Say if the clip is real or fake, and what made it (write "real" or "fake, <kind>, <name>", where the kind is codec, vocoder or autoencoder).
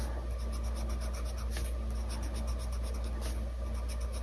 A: real